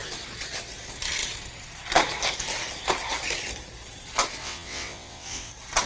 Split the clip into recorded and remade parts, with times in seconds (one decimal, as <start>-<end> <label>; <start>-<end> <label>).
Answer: 0.0-4.4 recorded; 4.4-5.5 remade; 5.5-5.9 recorded